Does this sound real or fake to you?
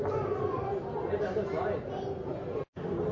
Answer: real